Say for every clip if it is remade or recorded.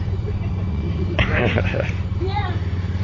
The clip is remade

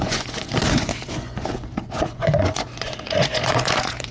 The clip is remade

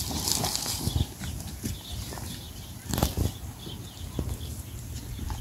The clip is recorded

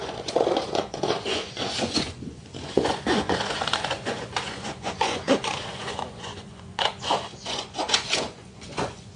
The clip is remade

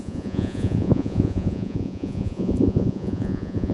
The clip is remade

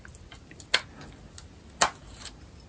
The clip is recorded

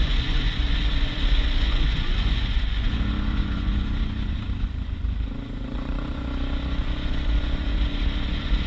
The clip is remade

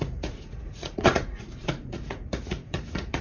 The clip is remade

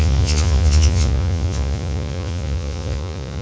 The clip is remade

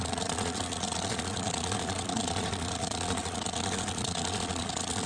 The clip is remade